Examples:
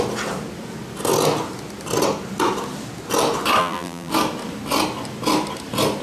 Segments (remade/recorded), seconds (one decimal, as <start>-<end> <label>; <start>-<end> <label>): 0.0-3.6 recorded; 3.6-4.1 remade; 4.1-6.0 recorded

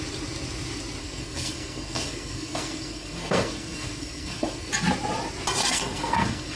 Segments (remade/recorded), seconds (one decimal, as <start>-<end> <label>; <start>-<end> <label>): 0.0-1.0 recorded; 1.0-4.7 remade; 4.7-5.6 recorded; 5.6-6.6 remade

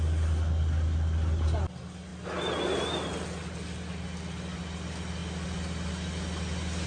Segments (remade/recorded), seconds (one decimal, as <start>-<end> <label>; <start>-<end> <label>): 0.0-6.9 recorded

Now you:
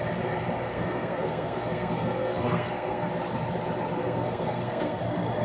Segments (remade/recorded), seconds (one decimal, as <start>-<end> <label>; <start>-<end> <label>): 0.0-0.7 recorded; 0.7-3.1 remade; 3.1-4.0 recorded; 4.0-5.0 remade; 5.0-5.4 recorded

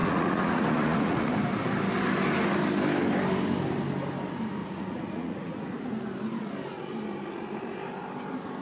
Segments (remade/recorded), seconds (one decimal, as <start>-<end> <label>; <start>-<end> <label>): 0.0-1.3 remade; 1.3-4.6 recorded; 4.6-5.9 remade; 5.9-8.6 recorded

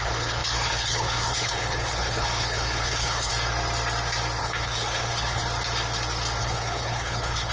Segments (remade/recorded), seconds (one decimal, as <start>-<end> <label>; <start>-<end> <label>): 0.0-3.3 remade; 3.3-4.4 recorded; 4.4-5.4 remade; 5.4-6.4 recorded; 6.4-7.5 remade

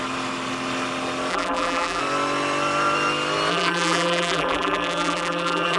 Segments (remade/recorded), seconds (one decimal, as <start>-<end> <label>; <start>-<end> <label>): 0.0-1.3 recorded; 1.3-2.0 remade; 2.0-3.5 recorded; 3.5-5.8 remade